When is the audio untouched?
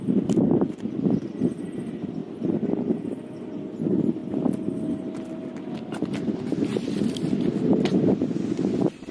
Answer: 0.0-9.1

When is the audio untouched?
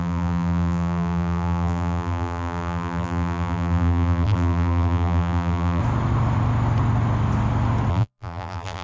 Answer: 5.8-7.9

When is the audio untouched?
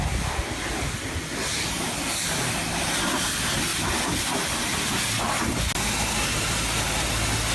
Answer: 0.0-7.5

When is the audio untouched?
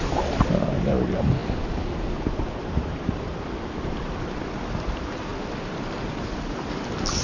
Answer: 5.3-6.2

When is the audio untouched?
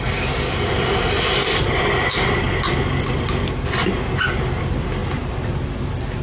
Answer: 0.0-5.0; 5.5-6.2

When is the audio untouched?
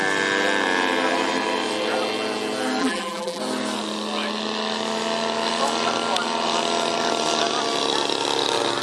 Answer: 0.0-2.8; 3.4-8.8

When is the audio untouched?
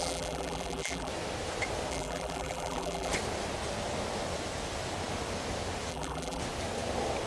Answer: 1.1-1.9; 3.1-5.9; 6.4-7.3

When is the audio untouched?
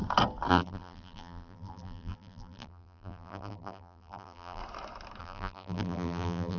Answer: 0.0-0.5; 4.6-5.2